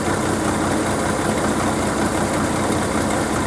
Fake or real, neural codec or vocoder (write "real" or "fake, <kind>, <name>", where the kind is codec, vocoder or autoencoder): real